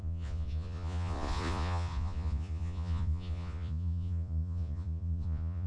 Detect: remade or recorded remade